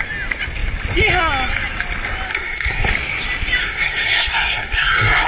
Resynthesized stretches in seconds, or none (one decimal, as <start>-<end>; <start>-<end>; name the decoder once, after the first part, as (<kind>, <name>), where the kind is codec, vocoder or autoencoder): 2.3-2.9 (codec, SNAC); 3.6-5.3